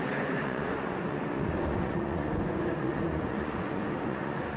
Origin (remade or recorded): remade